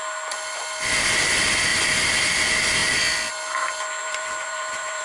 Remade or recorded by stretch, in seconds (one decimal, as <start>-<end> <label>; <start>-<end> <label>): 0.0-1.7 recorded; 1.7-2.4 remade; 2.4-4.0 recorded; 4.0-5.0 remade